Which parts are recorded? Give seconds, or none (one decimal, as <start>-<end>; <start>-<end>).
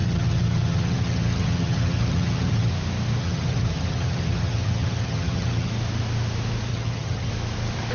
2.7-3.2; 5.7-6.7; 7.3-7.9